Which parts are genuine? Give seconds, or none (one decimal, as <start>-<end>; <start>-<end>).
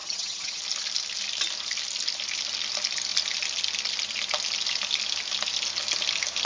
0.6-6.5